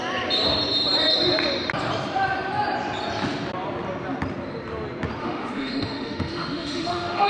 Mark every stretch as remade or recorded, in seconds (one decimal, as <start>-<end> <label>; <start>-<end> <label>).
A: 0.0-5.2 recorded; 5.2-7.3 remade